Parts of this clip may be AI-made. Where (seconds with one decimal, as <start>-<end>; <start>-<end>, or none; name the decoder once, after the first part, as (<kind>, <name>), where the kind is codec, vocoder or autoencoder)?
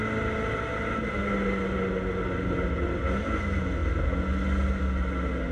none